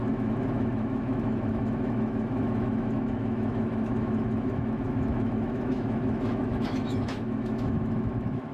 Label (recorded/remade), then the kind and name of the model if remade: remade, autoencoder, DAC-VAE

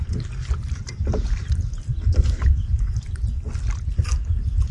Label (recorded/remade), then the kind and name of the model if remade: recorded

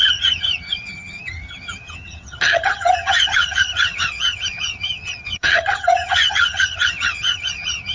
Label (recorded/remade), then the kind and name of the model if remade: remade, vocoder, HiFi-GAN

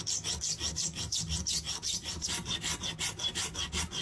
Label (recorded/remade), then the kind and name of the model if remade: recorded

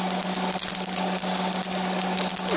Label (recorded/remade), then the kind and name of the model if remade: recorded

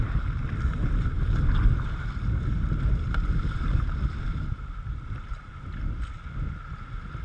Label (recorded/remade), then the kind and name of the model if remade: recorded